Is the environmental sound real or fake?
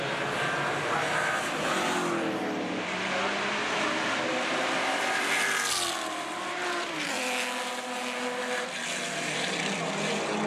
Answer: real